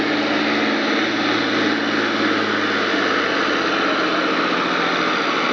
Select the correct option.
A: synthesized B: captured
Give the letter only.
B